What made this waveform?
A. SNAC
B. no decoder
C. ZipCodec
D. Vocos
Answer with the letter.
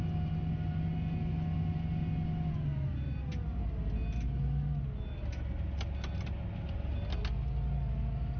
B